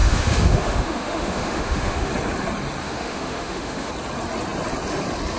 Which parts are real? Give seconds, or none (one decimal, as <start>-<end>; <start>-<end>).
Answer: 2.1-2.8; 3.9-5.4